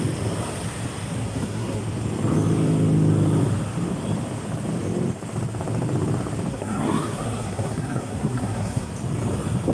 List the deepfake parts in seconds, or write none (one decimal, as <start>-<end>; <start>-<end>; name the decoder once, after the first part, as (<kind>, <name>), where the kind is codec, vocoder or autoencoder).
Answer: 1.2-1.8 (codec, SNAC); 6.5-8.9